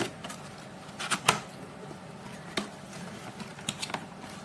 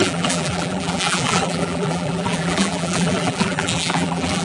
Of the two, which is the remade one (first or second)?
second